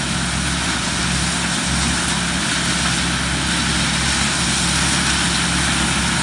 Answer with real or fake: real